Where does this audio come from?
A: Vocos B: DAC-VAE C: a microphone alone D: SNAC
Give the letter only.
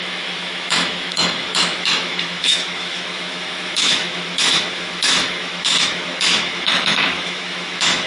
B